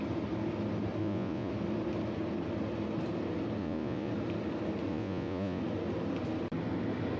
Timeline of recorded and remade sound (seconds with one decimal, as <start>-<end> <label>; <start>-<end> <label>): 0.0-1.0 recorded; 1.0-1.5 remade; 1.5-3.6 recorded; 3.6-4.1 remade; 4.1-4.9 recorded; 4.9-5.6 remade; 5.6-7.2 recorded